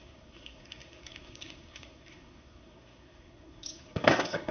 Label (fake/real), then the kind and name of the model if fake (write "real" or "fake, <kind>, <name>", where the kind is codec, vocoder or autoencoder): fake, codec, SNAC